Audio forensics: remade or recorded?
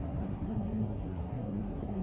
remade